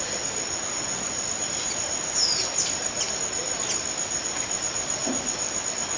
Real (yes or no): yes